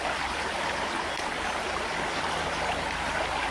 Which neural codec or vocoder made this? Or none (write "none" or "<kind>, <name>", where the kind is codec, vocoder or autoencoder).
none